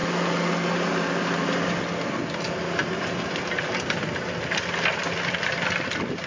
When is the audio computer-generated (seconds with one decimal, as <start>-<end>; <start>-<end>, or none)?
none